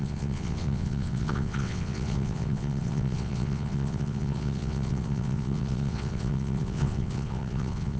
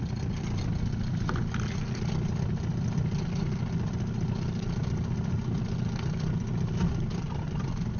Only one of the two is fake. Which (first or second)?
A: first